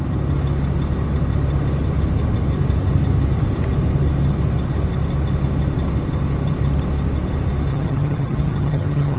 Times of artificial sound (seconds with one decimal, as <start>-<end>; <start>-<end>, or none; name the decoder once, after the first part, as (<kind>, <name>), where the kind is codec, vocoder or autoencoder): 7.7-9.2 (vocoder, HiFi-GAN)